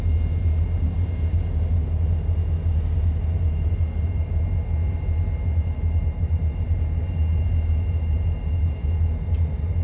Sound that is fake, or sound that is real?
real